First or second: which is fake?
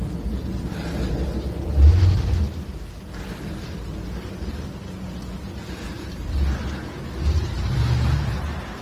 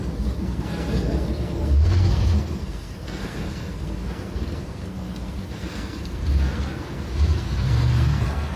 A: second